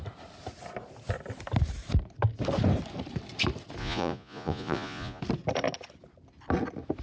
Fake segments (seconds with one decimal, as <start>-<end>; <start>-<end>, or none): 3.8-5.2